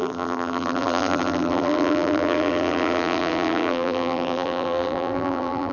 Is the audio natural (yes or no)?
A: no